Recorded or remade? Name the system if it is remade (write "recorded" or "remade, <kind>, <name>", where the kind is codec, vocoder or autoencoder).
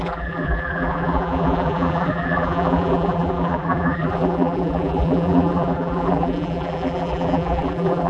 remade, vocoder, BigVGAN v2